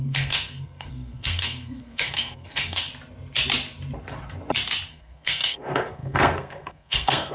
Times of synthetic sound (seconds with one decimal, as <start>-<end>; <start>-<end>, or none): 0.0-2.9; 4.9-7.3